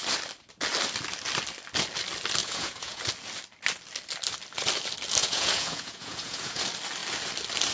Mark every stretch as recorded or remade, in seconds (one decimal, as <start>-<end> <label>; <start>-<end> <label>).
0.0-2.4 recorded; 2.4-3.0 remade; 3.0-5.2 recorded; 5.2-6.6 remade; 6.6-7.7 recorded